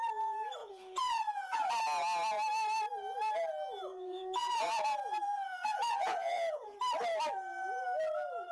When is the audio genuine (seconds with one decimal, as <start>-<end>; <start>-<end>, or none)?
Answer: 0.0-0.6; 1.7-3.9; 6.8-8.5